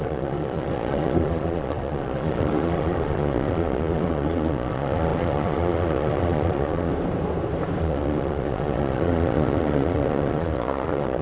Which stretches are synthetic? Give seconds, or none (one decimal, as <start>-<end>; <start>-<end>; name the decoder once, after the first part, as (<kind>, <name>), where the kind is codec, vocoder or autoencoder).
0.0-6.9 (vocoder, Vocos); 7.8-11.2